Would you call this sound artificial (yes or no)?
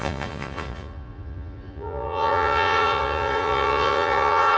yes